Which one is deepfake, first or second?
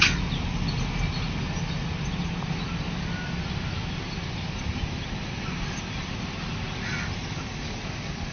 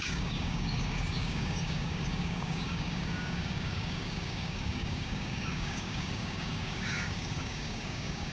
second